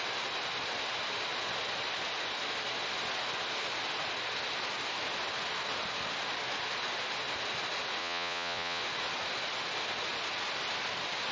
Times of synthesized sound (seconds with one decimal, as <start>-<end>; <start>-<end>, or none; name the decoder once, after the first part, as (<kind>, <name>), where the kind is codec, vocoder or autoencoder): 8.0-8.8 (vocoder, Vocos)